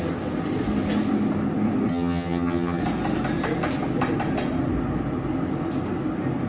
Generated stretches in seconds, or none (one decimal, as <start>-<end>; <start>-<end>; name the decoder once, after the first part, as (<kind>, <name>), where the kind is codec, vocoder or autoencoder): 1.9-2.8 (vocoder, HiFi-GAN)